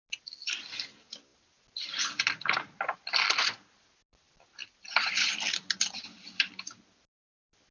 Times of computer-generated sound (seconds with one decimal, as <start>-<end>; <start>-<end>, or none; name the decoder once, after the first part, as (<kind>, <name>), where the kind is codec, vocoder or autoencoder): none